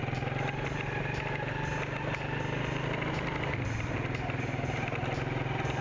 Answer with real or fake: real